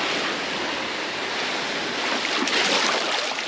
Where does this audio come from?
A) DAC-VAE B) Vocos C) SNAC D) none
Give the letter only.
D